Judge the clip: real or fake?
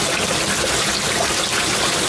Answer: real